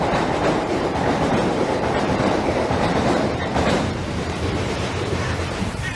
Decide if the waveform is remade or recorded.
remade